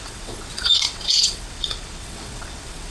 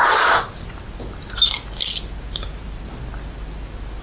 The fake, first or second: first